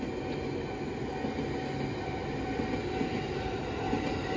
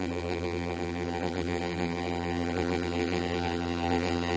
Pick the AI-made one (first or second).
second